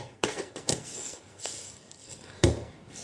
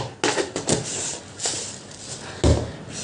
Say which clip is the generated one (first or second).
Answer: first